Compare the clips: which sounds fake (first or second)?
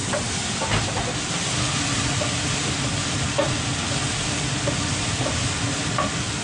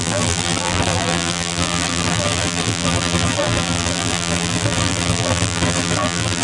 second